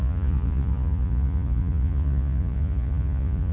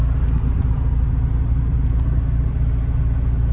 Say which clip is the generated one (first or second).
first